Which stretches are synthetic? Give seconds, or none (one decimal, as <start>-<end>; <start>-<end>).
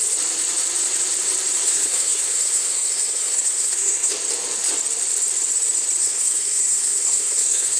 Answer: 1.6-4.1; 6.0-7.8